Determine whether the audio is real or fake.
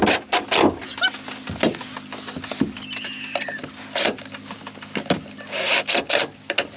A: real